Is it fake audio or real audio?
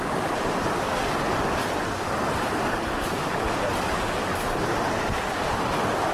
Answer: fake